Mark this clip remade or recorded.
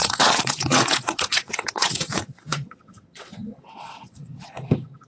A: remade